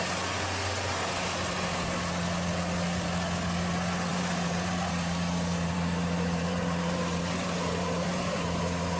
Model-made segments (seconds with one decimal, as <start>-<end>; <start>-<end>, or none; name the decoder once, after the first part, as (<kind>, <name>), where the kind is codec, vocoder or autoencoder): 4.1-8.6 (vocoder, BigVGAN v2)